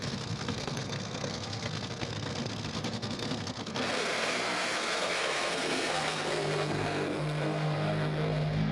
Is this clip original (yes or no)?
no